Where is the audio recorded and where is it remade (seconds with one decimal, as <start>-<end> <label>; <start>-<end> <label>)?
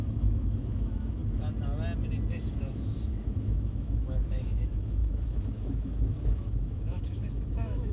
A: 0.0-1.2 remade; 1.2-2.6 recorded; 2.6-7.9 remade